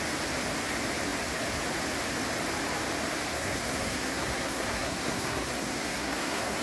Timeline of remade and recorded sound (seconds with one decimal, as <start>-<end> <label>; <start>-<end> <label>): 0.0-3.3 recorded; 3.3-6.6 remade